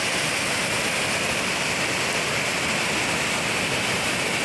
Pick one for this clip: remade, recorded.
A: recorded